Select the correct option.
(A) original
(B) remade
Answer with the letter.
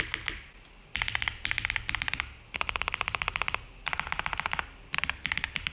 A